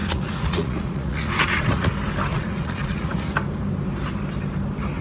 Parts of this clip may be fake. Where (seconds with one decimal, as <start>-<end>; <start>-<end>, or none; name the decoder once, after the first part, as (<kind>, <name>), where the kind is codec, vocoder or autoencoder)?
0.0-1.9 (vocoder, Vocos); 2.3-3.3